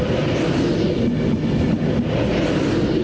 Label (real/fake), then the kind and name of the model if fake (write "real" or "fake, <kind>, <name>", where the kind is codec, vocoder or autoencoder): real